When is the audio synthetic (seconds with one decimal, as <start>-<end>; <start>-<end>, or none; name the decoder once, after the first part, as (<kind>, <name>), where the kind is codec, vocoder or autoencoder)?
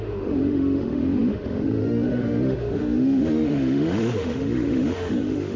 0.0-5.6 (autoencoder, DAC-VAE)